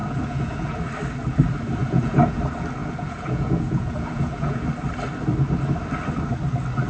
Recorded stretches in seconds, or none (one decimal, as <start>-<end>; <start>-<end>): 0.8-1.8; 2.4-2.8; 4.6-6.9